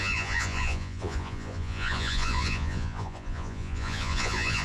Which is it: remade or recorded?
remade